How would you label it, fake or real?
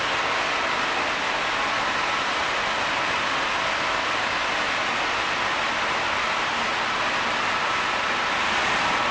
real